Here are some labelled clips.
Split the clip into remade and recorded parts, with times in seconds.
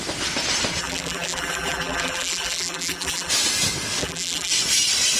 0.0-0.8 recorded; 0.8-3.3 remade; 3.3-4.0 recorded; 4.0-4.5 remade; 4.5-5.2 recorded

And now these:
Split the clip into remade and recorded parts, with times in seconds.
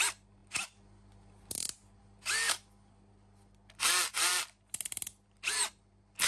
0.0-6.3 recorded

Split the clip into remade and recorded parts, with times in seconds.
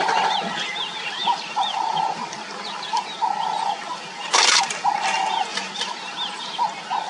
0.0-1.2 recorded; 1.2-3.1 remade; 3.1-5.5 recorded; 5.5-6.3 remade; 6.3-7.1 recorded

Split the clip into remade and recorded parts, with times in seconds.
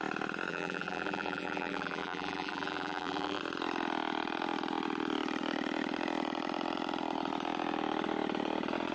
0.0-0.5 recorded; 0.5-3.4 remade; 3.4-8.9 recorded